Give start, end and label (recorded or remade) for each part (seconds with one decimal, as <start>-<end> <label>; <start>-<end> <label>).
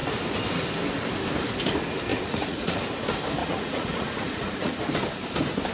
0.0-2.1 recorded; 2.1-2.8 remade; 2.8-3.4 recorded; 3.4-4.7 remade; 4.7-5.7 recorded